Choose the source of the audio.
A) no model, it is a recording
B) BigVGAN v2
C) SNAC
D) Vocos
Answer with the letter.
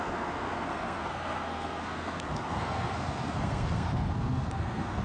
C